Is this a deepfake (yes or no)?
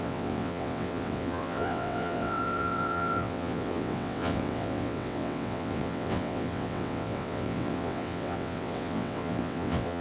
yes